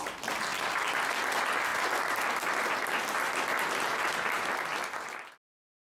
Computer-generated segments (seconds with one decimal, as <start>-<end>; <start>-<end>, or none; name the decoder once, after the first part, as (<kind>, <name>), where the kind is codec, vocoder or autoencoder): none